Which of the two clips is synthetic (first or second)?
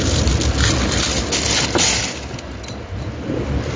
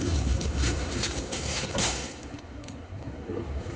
second